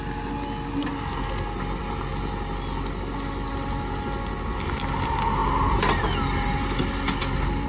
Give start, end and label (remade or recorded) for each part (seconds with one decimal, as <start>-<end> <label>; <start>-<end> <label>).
0.0-7.7 recorded